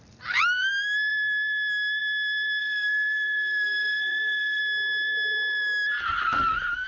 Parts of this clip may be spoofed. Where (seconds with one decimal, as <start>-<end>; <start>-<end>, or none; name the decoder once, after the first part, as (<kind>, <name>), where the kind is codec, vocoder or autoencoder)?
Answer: 2.6-4.6 (codec, SNAC)